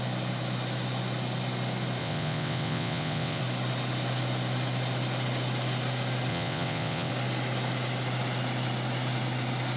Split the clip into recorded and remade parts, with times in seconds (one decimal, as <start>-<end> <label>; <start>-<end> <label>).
0.0-2.0 recorded; 2.0-3.4 remade; 3.4-6.3 recorded; 6.3-7.1 remade; 7.1-9.8 recorded